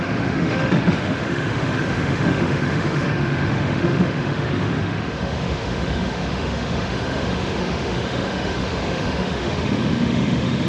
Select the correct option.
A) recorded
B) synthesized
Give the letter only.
B